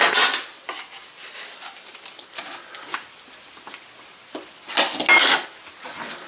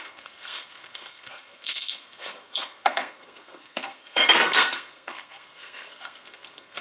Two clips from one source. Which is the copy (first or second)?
second